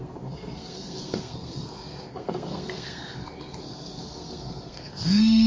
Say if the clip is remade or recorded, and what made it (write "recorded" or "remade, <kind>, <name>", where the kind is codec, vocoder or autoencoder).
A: remade, codec, SNAC